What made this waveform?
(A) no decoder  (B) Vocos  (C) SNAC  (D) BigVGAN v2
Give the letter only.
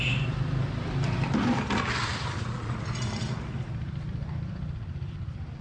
D